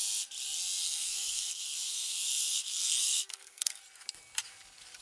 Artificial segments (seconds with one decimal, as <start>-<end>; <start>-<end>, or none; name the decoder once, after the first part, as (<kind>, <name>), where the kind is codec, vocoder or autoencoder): 0.8-3.8 (codec, SNAC)